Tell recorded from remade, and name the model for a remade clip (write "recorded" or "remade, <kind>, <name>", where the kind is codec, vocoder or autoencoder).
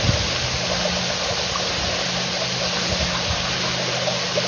recorded